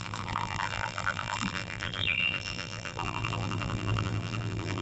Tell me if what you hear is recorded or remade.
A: remade